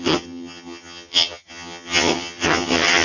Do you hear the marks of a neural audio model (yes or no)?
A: yes